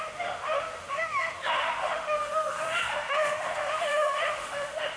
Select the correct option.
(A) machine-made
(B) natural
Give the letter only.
A